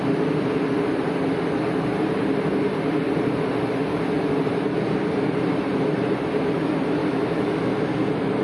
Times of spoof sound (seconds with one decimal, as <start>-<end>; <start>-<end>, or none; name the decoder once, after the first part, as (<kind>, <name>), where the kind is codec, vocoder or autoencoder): 7.0-7.7 (autoencoder, DAC-VAE)